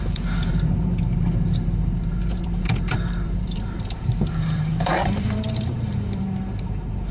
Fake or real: fake